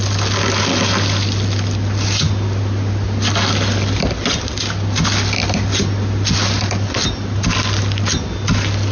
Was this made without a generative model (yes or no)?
yes